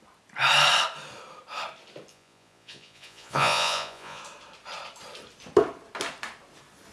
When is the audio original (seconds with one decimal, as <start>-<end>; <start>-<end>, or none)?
0.0-2.1; 4.2-6.9